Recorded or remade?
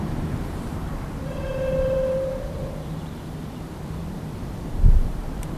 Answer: remade